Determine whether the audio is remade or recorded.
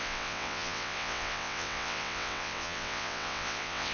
remade